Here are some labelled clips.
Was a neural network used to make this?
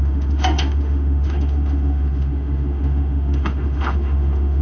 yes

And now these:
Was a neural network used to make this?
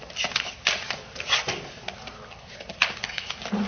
no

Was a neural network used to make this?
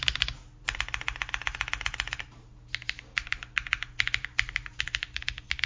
no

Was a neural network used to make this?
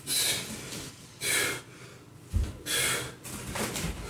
no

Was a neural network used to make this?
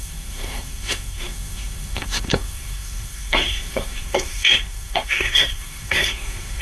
yes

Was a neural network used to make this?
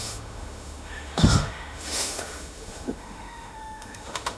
yes